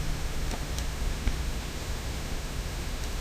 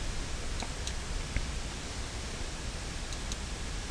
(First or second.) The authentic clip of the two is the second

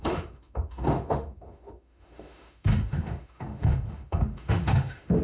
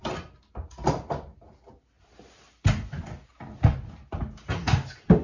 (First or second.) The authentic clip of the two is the second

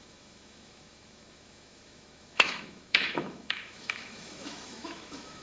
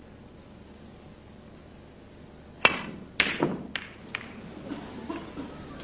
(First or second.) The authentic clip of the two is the second